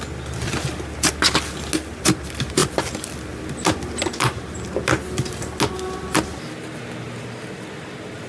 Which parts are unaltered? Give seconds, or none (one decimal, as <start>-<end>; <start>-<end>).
0.0-8.3

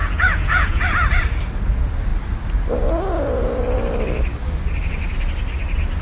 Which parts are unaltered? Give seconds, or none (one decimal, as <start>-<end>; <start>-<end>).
0.8-6.0

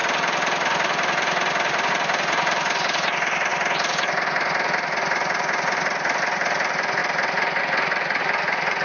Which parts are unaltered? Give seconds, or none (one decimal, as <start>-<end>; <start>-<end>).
3.5-6.2

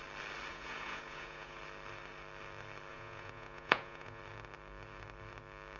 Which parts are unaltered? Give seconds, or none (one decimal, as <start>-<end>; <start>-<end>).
0.0-0.5; 1.6-2.9; 4.2-5.8

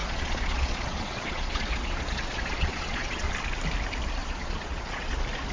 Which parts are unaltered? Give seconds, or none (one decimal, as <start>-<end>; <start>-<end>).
3.3-4.2; 5.1-5.5

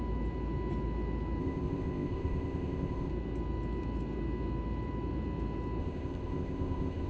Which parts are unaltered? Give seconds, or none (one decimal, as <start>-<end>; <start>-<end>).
0.0-1.4; 3.1-5.8

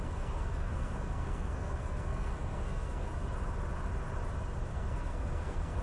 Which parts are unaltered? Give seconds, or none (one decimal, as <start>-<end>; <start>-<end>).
3.1-4.7

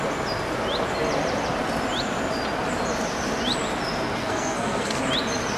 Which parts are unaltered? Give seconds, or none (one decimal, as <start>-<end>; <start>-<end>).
0.0-4.2; 5.0-5.6